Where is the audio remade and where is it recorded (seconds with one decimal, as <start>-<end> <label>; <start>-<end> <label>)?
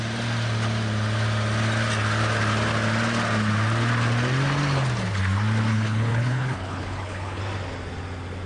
0.0-5.7 recorded; 5.7-7.4 remade; 7.4-8.5 recorded